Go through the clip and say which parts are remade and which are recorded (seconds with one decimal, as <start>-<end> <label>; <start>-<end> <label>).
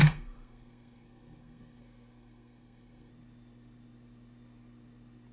0.0-3.1 remade; 3.1-5.3 recorded